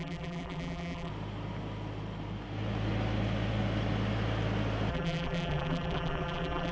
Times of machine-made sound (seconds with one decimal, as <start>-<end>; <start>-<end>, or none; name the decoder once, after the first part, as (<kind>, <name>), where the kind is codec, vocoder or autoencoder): 0.0-1.1 (vocoder, BigVGAN v2); 4.9-6.7